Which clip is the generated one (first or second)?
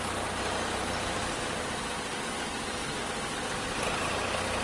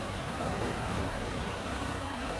second